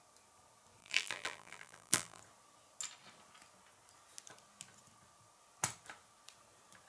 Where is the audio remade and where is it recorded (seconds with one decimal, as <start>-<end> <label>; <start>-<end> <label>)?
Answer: 0.0-0.8 recorded; 0.8-2.2 remade; 2.2-6.9 recorded